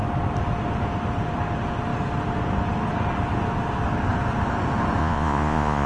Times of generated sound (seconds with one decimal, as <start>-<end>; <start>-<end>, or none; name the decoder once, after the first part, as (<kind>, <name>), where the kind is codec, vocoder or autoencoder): 5.0-5.9 (vocoder, Vocos)